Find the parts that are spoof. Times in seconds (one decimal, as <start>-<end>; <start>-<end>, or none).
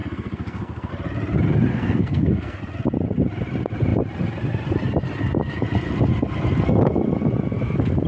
0.0-0.9; 1.7-2.6